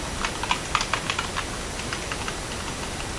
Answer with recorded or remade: recorded